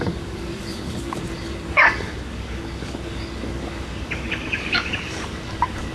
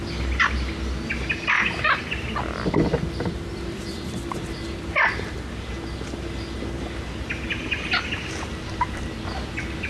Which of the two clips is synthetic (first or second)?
first